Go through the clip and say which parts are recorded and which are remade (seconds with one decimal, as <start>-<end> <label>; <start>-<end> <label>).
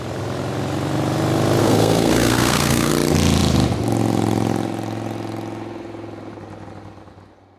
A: 0.0-1.6 recorded; 1.6-2.9 remade; 2.9-7.6 recorded